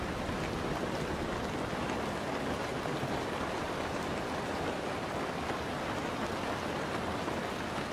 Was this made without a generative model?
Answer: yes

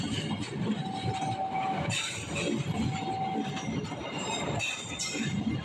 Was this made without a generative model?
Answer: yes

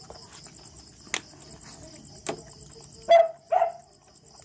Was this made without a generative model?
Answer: yes